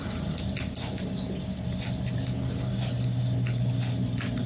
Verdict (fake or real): real